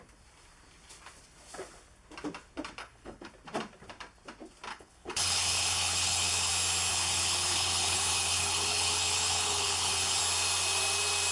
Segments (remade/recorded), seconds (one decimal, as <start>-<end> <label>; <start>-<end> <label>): 0.0-2.8 recorded; 2.8-3.3 remade; 3.3-4.7 recorded; 4.7-6.5 remade; 6.5-6.9 recorded; 6.9-10.2 remade; 10.2-11.3 recorded